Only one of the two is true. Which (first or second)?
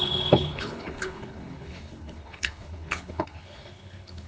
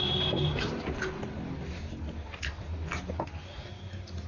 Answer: second